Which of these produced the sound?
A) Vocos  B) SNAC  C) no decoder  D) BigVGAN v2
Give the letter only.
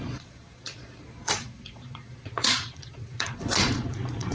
A